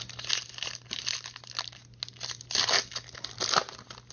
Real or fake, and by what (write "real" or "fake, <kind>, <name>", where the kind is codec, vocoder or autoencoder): real